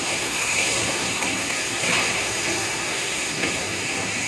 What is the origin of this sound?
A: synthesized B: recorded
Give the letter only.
A